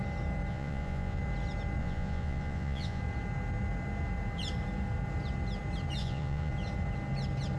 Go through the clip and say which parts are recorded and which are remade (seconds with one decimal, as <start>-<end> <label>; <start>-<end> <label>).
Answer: 0.0-0.5 recorded; 0.5-1.2 remade; 1.2-1.8 recorded; 1.8-3.0 remade; 3.0-6.0 recorded; 6.0-6.5 remade; 6.5-7.6 recorded